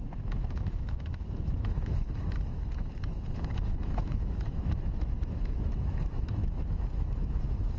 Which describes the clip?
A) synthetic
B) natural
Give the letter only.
A